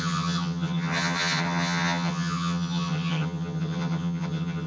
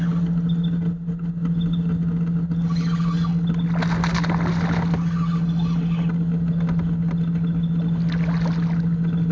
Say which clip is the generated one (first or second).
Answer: first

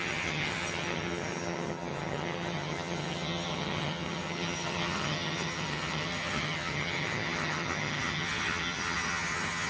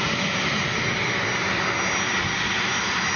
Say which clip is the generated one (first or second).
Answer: first